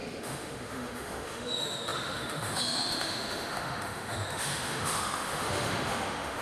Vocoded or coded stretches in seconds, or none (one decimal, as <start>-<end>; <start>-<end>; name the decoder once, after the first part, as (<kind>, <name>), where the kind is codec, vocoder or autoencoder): 0.0-6.4 (autoencoder, DAC-VAE)